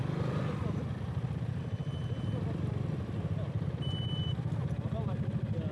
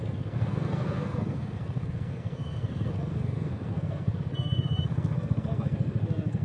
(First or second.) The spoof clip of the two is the second